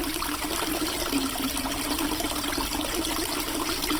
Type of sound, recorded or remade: recorded